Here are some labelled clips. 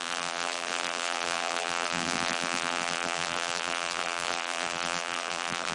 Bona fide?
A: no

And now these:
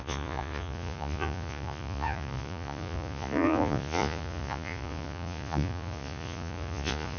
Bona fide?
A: no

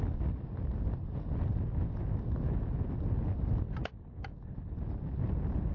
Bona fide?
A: yes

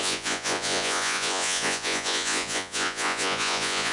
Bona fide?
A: no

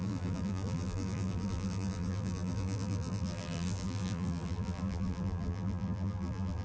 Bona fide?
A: no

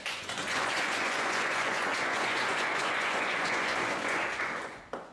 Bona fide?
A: no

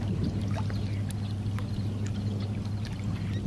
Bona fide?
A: yes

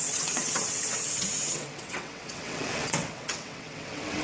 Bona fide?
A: no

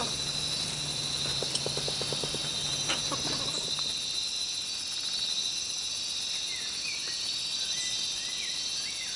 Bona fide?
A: yes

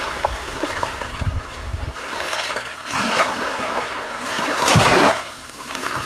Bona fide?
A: no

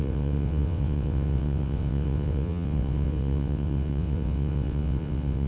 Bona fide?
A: no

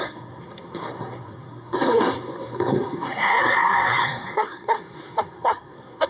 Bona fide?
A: no